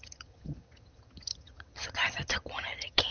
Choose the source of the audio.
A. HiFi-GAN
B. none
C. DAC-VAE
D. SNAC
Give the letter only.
A